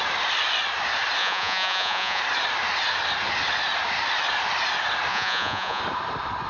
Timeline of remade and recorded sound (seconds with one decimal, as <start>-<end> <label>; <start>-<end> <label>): 0.0-1.2 recorded; 1.2-2.2 remade; 2.2-5.1 recorded; 5.1-5.8 remade; 5.8-6.5 recorded